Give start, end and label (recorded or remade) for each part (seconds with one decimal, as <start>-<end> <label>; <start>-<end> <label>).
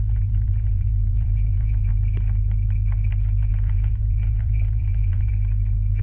0.0-1.9 remade; 1.9-3.4 recorded; 3.4-5.3 remade; 5.3-6.0 recorded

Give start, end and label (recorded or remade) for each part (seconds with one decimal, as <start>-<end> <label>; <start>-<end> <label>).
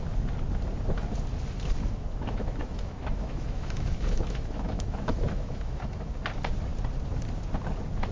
0.0-1.8 recorded; 1.8-6.1 remade; 6.1-8.1 recorded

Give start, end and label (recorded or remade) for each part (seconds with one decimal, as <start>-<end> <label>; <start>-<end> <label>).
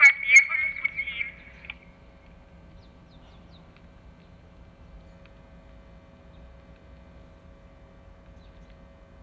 0.0-9.2 recorded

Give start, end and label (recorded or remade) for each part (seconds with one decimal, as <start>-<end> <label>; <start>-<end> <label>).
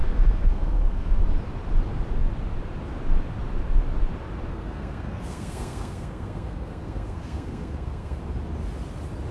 0.0-1.2 remade; 1.2-4.5 recorded; 4.5-8.2 remade; 8.2-9.3 recorded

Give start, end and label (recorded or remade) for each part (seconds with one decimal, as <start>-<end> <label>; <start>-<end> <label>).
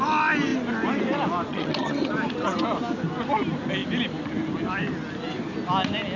0.0-1.5 recorded; 1.5-2.1 remade; 2.1-6.2 recorded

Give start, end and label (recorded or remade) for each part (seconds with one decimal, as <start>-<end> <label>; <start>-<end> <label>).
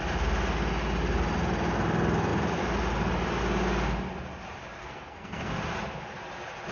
0.0-4.8 recorded; 4.8-5.5 remade; 5.5-6.7 recorded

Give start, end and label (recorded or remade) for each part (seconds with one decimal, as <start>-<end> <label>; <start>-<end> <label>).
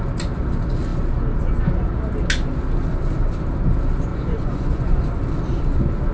0.0-4.1 recorded; 4.1-5.0 remade; 5.0-6.1 recorded